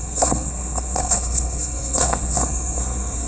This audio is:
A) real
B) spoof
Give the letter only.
B